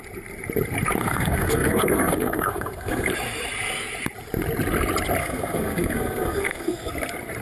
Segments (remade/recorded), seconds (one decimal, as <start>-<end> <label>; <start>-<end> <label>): 0.0-1.0 recorded; 1.0-3.1 remade; 3.1-5.2 recorded; 5.2-6.9 remade; 6.9-7.4 recorded